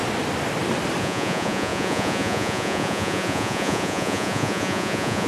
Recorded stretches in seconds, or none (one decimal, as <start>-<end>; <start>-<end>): 0.0-1.0